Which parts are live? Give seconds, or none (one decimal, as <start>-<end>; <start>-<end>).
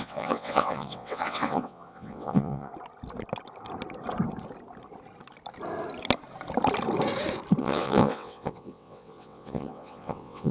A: 2.7-7.6